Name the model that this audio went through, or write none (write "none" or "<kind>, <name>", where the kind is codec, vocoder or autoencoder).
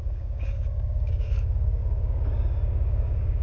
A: codec, DAC